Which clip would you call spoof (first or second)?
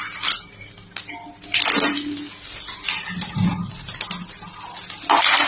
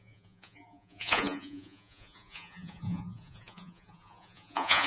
second